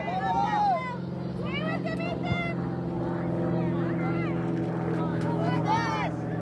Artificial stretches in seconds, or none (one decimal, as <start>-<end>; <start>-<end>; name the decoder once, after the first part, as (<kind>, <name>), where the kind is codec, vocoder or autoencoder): 5.1-5.6 (autoencoder, DAC-VAE)